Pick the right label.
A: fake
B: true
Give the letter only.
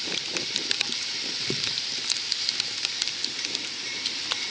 A